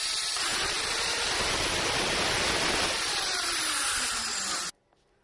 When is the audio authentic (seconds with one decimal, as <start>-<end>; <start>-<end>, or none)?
0.0-5.2